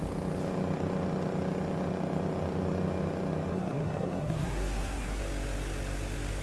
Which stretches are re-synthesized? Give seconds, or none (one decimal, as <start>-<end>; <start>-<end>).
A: 3.5-5.2